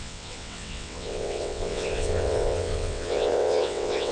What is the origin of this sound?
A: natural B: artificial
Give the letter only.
B